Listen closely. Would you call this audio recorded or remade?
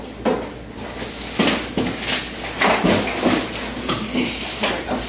recorded